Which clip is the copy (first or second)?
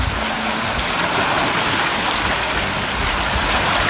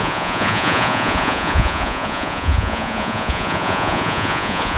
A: second